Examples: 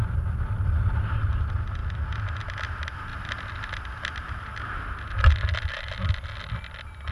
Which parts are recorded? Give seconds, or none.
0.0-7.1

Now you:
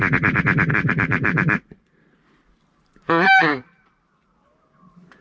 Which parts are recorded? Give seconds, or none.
0.0-0.7; 3.8-5.2

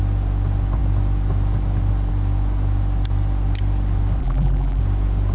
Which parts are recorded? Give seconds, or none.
0.0-4.2; 4.8-5.3

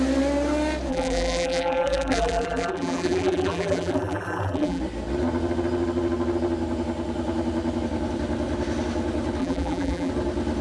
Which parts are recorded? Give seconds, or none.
0.0-0.9; 4.8-9.4; 10.1-10.6